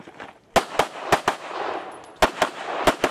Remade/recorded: recorded